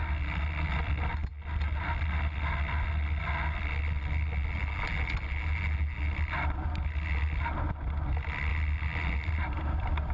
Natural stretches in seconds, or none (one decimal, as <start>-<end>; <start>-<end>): 0.0-10.1